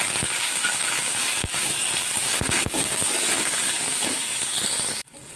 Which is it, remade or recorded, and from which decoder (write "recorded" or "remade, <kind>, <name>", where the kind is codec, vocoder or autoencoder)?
remade, codec, DAC